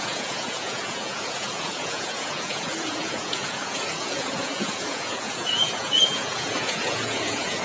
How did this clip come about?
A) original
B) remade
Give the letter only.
B